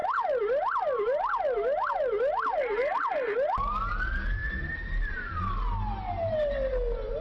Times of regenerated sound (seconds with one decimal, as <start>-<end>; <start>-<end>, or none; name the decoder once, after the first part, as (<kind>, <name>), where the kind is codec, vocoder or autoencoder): 4.4-5.4 (vocoder, BigVGAN v2)